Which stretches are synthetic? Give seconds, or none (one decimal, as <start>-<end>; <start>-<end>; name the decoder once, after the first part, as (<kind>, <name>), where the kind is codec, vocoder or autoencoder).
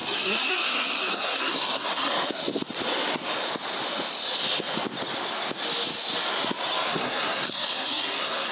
0.0-2.1 (codec, SNAC); 6.9-8.5